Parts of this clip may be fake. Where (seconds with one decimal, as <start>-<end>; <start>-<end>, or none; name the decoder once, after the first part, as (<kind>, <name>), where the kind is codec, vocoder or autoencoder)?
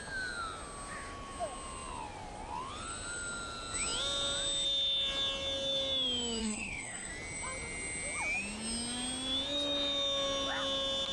6.4-7.1 (codec, SNAC)